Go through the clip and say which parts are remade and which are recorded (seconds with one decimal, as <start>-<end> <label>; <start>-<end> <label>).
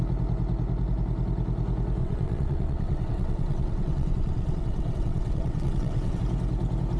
0.0-2.0 recorded; 2.0-6.2 remade; 6.2-7.0 recorded